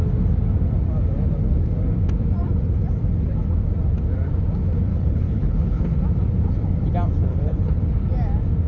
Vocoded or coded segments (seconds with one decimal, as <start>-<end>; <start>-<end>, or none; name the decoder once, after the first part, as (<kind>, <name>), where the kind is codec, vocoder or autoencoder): 4.9-6.0 (codec, HILCodec); 7.3-7.8